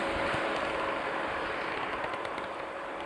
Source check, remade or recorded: remade